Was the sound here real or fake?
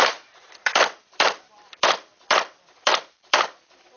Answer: fake